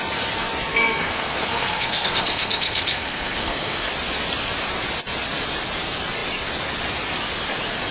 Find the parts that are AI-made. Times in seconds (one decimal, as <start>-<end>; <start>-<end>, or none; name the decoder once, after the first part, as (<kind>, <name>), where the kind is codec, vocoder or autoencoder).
0.7-3.9 (codec, SNAC)